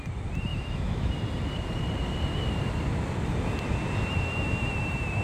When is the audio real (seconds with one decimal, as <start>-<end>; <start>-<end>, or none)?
0.0-0.5; 1.1-5.2